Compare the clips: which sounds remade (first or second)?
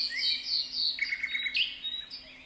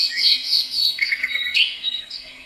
second